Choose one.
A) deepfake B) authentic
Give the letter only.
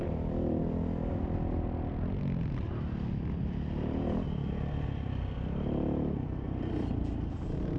B